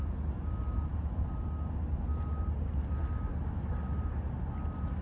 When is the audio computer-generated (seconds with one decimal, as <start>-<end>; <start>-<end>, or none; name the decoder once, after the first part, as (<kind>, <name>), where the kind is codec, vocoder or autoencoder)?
none